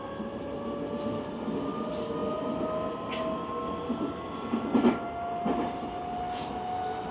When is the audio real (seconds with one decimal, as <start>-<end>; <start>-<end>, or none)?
0.0-7.1